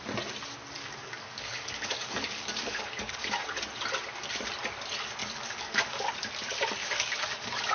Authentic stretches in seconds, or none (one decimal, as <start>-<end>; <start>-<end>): 0.0-0.8; 3.4-5.2; 6.1-6.8